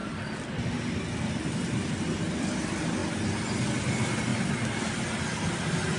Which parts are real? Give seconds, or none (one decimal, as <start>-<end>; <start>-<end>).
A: 0.0-1.3; 3.0-3.8; 4.3-5.5